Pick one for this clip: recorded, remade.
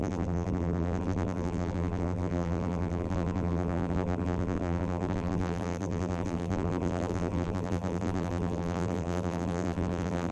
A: remade